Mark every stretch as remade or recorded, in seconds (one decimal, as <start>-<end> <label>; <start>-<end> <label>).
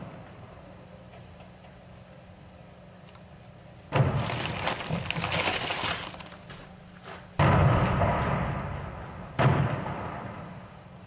0.0-5.7 recorded; 5.7-6.8 remade; 6.8-11.1 recorded